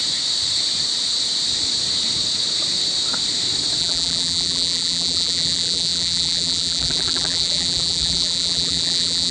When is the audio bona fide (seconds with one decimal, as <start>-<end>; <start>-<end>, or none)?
0.0-3.8